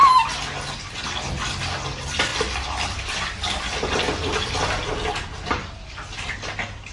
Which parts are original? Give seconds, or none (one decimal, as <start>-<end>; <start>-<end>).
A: 0.0-2.3; 5.9-6.9